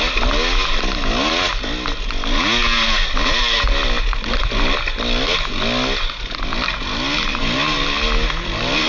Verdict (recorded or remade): recorded